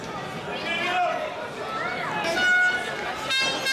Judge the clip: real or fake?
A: real